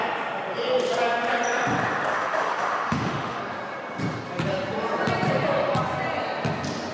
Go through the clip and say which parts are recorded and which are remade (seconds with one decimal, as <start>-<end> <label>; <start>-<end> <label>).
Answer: 0.0-2.1 recorded; 2.1-3.4 remade; 3.4-6.9 recorded